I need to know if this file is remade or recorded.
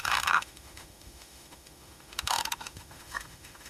remade